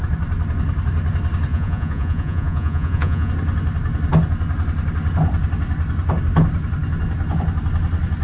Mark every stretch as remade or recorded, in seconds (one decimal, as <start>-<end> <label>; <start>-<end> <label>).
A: 0.0-1.5 recorded; 1.5-3.3 remade; 3.3-8.2 recorded